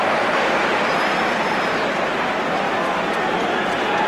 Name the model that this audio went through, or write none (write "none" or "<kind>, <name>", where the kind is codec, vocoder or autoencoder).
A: none